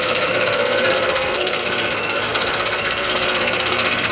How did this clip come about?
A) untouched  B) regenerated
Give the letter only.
B